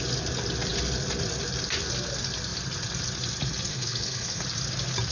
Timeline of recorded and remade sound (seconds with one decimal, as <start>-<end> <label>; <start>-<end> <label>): 0.0-3.7 recorded; 3.7-4.4 remade; 4.4-5.1 recorded